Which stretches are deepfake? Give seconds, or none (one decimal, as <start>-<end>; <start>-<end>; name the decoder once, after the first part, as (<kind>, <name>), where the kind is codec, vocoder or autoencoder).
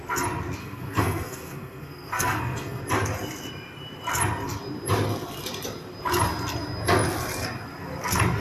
0.6-2.8 (codec, SNAC)